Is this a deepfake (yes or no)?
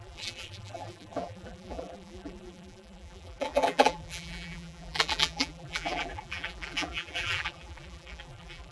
yes